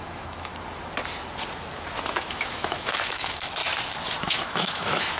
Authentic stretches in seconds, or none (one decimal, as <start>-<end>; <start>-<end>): 0.5-2.1; 3.6-4.2